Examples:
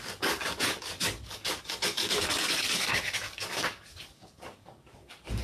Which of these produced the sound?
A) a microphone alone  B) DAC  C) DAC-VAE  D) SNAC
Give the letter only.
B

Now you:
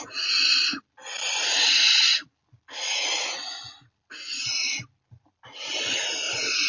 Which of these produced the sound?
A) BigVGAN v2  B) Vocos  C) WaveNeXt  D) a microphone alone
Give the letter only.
D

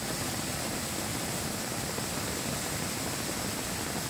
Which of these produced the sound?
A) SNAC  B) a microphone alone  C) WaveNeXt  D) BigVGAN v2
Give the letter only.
B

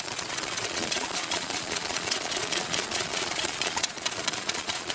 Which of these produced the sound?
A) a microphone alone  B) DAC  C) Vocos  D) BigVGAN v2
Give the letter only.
C